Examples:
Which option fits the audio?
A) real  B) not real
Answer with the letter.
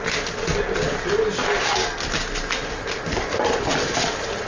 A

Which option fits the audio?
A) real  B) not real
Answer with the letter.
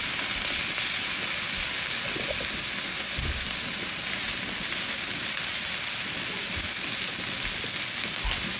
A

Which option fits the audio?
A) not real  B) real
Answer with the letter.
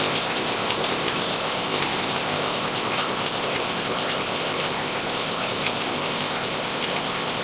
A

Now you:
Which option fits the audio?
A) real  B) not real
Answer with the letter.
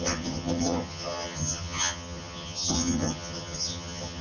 B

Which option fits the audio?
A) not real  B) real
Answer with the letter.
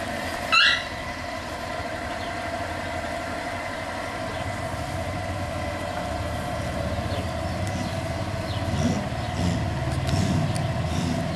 B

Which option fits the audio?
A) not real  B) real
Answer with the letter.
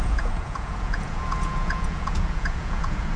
A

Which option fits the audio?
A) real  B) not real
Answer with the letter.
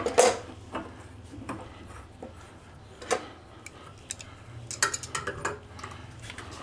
A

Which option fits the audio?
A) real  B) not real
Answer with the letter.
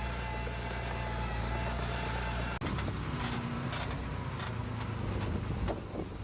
A